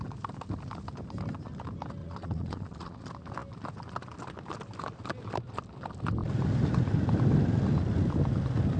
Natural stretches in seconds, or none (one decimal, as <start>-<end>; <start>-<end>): 0.0-2.0; 3.0-8.8